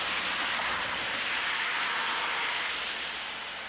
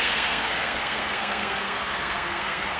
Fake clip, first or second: second